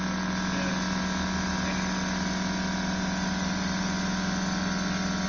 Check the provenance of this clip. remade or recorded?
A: recorded